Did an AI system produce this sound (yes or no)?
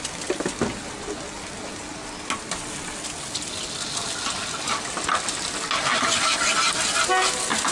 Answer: no